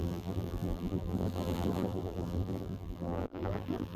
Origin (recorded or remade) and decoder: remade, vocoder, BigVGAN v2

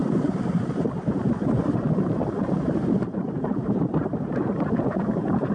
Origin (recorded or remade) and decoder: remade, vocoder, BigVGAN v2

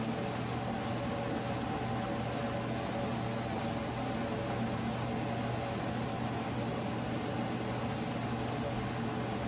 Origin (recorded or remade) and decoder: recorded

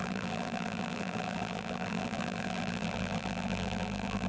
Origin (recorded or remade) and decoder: remade, vocoder, BigVGAN v2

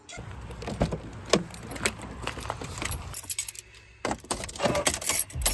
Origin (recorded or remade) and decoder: recorded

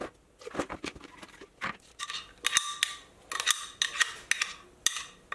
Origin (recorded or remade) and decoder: recorded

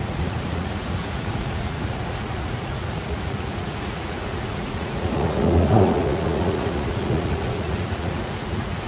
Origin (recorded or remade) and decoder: remade, vocoder, Vocos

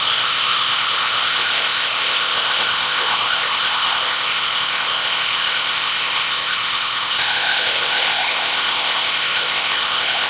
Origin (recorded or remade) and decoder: remade, codec, ZipCodec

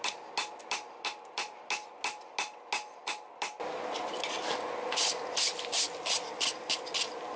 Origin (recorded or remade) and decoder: recorded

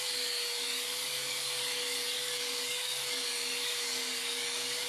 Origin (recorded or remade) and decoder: remade, codec, DAC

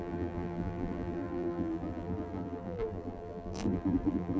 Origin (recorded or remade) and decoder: remade, vocoder, BigVGAN v2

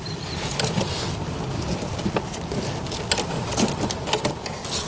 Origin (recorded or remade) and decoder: recorded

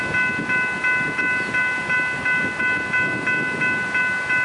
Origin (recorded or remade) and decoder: recorded